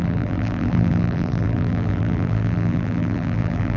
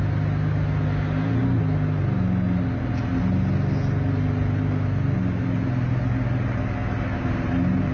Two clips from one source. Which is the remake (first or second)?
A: first